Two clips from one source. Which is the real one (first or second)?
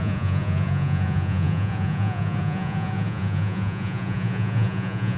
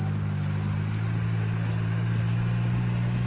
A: second